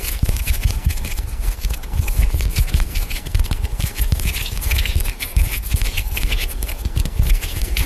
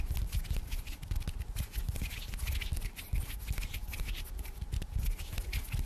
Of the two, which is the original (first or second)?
second